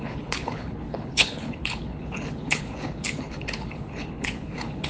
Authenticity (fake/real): fake